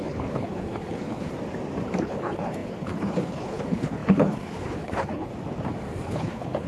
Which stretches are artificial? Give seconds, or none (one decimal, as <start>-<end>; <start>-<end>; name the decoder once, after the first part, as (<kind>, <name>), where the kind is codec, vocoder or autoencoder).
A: 0.0-1.3 (codec, HILCodec); 2.0-5.3; 6.1-6.7